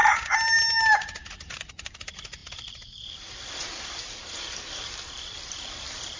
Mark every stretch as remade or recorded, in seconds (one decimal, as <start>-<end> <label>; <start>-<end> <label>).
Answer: 0.0-6.2 remade

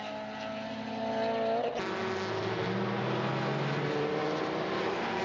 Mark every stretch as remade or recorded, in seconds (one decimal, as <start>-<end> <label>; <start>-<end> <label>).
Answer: 0.0-4.2 recorded; 4.2-5.2 remade

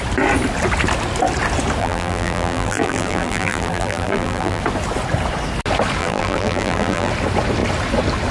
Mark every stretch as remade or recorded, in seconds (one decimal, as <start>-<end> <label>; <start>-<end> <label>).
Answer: 0.0-1.8 recorded; 1.8-4.6 remade; 4.6-6.0 recorded; 6.0-7.1 remade; 7.1-8.3 recorded

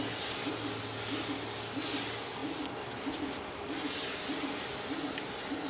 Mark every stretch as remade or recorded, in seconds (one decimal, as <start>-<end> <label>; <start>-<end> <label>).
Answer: 0.0-5.7 recorded